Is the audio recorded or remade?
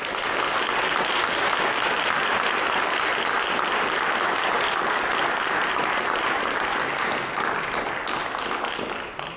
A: recorded